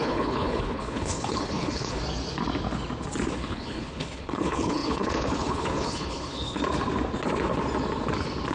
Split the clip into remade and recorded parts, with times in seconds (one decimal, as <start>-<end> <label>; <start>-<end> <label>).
0.0-2.0 remade; 2.0-3.3 recorded; 3.3-6.6 remade; 6.6-8.5 recorded